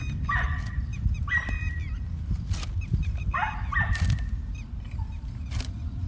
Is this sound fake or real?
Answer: real